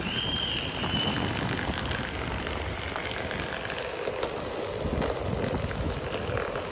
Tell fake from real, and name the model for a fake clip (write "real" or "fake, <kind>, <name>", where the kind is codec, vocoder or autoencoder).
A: real